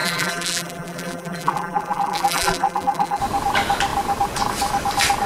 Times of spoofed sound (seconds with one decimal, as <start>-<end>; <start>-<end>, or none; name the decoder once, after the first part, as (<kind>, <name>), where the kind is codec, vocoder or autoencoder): 0.0-3.2 (vocoder, BigVGAN v2)